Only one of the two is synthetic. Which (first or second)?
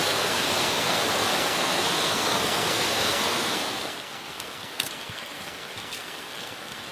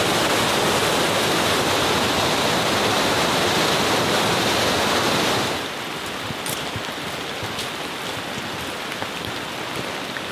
first